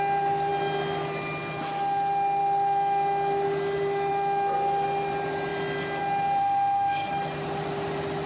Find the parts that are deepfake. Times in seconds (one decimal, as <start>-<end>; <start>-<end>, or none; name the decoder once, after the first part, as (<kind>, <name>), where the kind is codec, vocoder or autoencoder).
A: 6.4-7.1 (autoencoder, DAC-VAE)